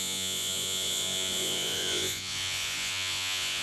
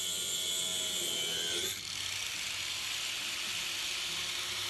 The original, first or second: second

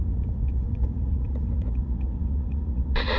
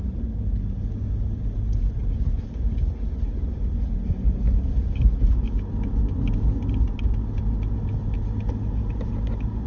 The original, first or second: second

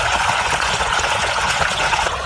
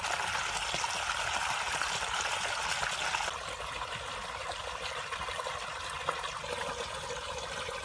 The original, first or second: second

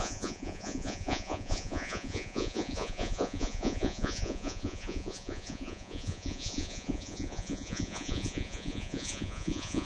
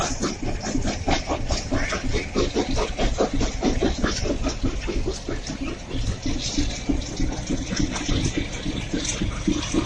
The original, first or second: second